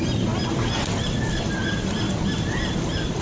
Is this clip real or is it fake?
real